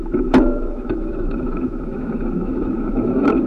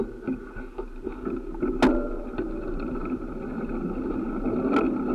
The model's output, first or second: first